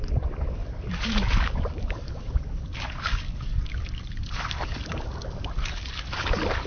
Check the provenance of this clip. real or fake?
fake